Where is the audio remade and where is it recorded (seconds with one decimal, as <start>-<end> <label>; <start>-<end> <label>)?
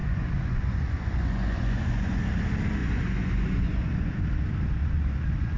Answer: 0.0-2.2 remade; 2.2-2.8 recorded; 2.8-4.2 remade; 4.2-4.8 recorded; 4.8-5.6 remade